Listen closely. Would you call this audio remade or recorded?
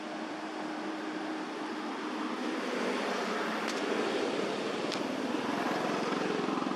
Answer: remade